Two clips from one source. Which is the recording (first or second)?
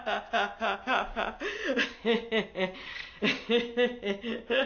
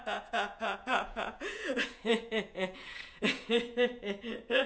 first